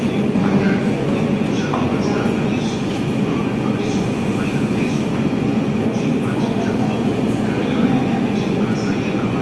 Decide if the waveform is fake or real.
fake